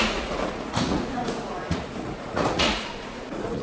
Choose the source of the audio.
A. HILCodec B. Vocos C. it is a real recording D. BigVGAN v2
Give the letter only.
B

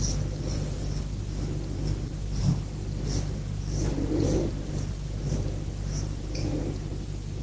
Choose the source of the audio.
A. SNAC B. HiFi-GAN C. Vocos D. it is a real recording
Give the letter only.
D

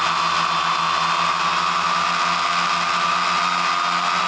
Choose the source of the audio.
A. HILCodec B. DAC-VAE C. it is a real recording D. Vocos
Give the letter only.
C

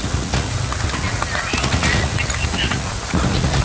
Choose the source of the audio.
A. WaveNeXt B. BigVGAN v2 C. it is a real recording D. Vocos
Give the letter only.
D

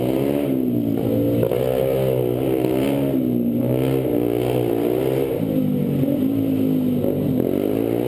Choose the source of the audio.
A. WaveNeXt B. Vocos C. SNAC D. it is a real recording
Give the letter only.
D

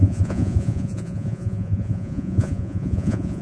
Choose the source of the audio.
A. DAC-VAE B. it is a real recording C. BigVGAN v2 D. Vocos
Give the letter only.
D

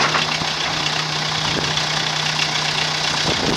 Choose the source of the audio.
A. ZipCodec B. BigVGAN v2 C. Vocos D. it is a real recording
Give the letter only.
D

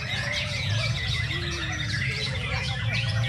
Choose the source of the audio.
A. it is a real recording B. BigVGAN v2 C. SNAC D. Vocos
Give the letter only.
D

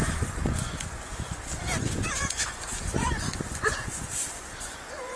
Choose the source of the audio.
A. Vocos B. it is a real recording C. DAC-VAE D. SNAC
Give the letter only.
A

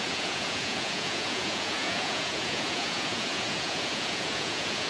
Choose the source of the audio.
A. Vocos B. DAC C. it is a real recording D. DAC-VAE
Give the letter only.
A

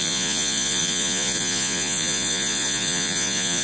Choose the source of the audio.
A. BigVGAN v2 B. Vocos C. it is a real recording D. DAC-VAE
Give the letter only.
B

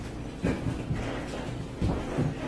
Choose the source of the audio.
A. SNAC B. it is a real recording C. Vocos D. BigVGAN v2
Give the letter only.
B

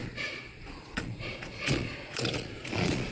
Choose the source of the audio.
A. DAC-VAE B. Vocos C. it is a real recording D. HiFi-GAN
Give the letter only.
B